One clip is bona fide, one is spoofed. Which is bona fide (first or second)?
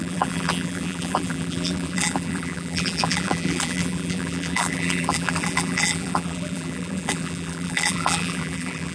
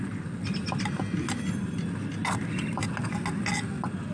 second